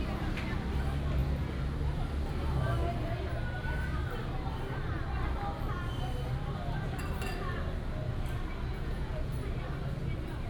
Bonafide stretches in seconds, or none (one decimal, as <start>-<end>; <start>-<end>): 0.0-8.7; 9.3-10.5